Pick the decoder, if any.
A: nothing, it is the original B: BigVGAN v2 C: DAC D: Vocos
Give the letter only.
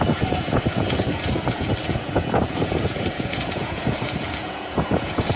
D